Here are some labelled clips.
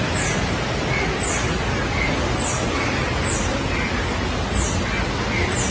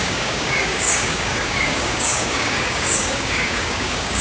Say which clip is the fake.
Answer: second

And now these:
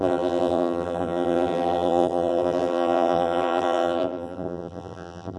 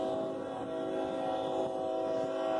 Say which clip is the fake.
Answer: first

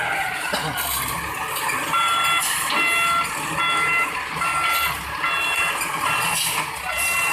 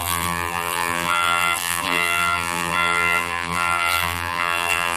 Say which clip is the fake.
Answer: second